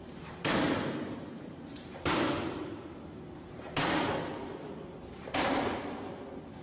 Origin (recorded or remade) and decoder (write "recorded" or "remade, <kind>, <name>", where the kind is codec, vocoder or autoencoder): remade, vocoder, BigVGAN v2